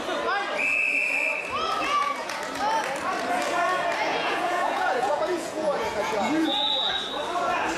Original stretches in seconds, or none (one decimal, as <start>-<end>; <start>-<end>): 0.0-1.8; 2.4-4.1; 6.9-7.8